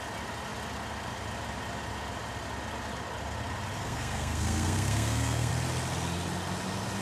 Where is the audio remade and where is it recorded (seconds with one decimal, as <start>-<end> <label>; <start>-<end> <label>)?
0.0-3.8 recorded; 3.8-5.5 remade; 5.5-7.0 recorded